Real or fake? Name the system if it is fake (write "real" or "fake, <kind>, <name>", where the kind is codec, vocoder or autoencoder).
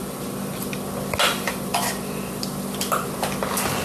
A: real